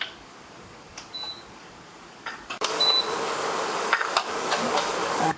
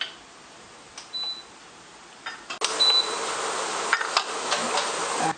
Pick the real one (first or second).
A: second